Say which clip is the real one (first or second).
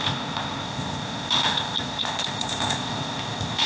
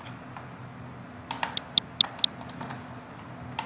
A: second